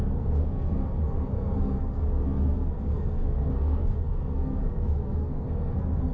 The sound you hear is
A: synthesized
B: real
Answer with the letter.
A